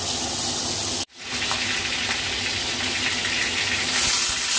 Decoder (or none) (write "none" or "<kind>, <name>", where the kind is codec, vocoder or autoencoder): none